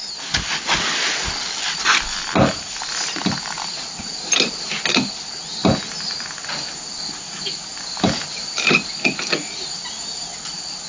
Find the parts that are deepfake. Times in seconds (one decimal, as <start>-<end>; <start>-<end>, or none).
none